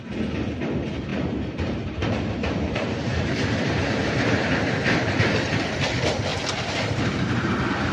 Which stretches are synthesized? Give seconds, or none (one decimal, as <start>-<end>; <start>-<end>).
1.1-5.8; 6.3-7.5